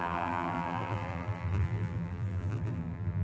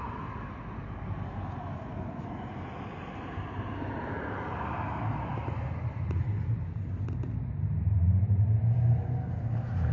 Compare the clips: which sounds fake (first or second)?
first